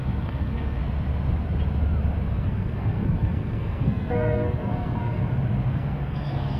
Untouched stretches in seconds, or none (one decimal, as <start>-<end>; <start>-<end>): 0.8-2.3; 5.2-5.7

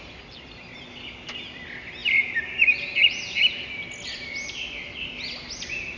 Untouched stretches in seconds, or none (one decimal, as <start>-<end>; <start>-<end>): 0.0-6.0

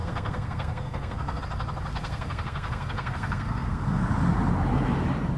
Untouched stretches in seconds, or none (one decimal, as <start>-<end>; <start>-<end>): 1.4-1.9; 4.0-5.4

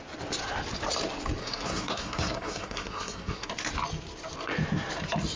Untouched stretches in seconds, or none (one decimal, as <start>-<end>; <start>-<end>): 0.0-1.4; 3.5-5.4

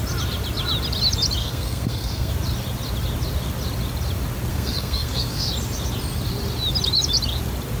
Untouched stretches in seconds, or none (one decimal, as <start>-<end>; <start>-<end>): 0.0-1.4; 2.3-4.5; 5.5-7.8